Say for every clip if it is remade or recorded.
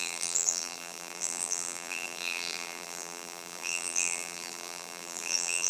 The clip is remade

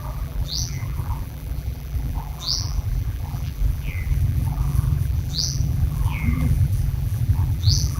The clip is remade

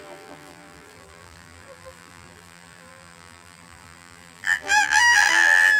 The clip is remade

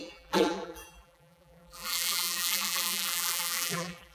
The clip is remade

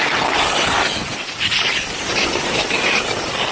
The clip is recorded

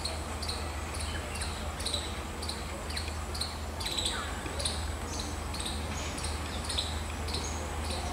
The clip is recorded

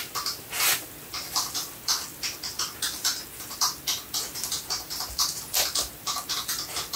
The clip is recorded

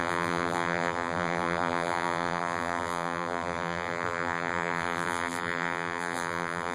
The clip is remade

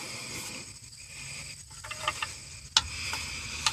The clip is recorded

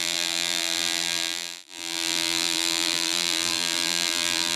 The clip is remade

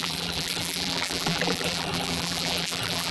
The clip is remade